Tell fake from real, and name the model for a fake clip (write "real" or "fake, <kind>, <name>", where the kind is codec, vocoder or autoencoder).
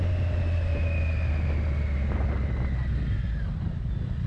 real